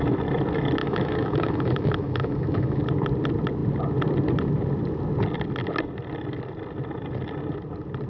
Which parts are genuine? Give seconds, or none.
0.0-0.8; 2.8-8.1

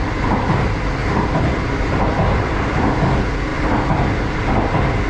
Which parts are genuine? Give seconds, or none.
0.0-1.0; 2.5-5.1

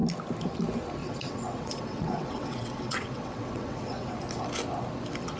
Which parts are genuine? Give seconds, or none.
0.0-1.0; 4.2-5.4